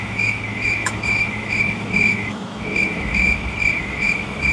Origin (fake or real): fake